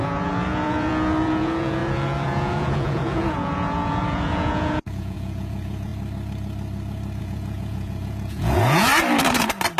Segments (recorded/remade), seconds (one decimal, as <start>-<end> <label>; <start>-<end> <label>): 0.0-5.9 remade; 5.9-7.2 recorded; 7.2-8.9 remade; 8.9-9.8 recorded